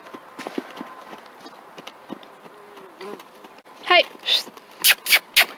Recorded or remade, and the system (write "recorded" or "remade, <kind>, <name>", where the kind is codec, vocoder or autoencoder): recorded